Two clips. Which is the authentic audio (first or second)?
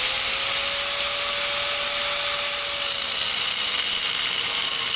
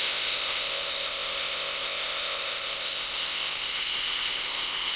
first